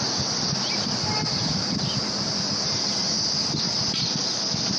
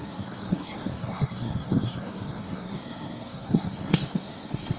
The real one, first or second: first